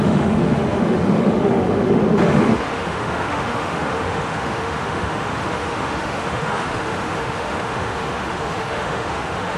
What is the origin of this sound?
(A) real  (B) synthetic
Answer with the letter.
B